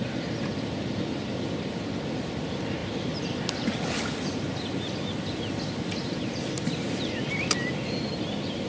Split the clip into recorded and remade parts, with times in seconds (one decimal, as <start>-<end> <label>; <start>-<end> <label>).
0.0-8.7 recorded